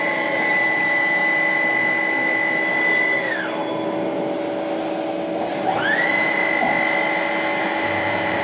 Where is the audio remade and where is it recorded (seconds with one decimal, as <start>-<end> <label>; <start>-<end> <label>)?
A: 0.0-1.2 remade; 1.2-5.5 recorded; 5.5-6.4 remade; 6.4-7.6 recorded; 7.6-8.4 remade